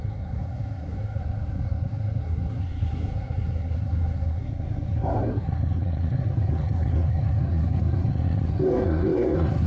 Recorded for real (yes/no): no